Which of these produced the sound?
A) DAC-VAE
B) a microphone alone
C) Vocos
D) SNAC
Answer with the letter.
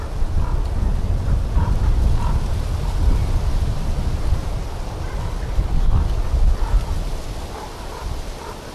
B